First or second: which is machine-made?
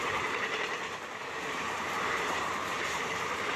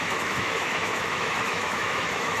second